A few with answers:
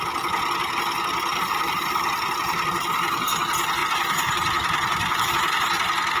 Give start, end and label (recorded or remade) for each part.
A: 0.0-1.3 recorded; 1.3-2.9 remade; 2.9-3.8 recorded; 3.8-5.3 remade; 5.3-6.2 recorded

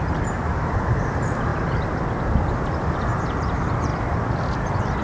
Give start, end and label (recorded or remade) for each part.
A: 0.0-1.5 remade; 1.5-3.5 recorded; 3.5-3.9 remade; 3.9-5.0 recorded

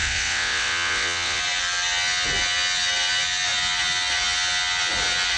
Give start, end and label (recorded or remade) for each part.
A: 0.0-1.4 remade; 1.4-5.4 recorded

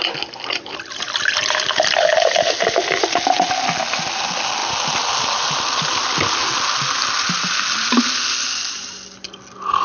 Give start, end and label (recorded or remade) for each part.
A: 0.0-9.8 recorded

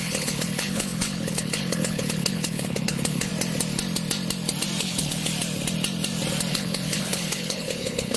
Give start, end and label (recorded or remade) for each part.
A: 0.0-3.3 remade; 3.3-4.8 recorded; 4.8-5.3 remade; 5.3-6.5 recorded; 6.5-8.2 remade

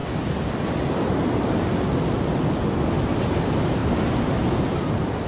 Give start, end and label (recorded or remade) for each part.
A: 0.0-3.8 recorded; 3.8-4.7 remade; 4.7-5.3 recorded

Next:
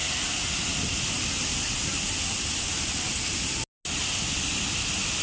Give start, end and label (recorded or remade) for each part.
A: 0.0-5.2 recorded